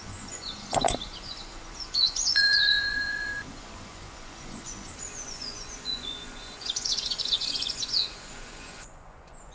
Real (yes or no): no